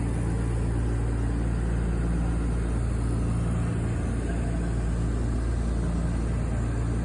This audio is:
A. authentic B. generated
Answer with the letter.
A